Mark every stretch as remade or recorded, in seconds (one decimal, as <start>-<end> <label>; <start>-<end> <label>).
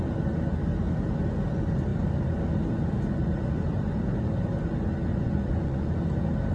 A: 0.0-5.1 recorded; 5.1-6.0 remade; 6.0-6.5 recorded